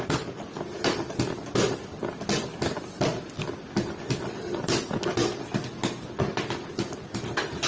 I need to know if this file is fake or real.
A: real